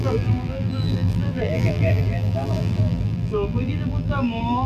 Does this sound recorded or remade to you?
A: remade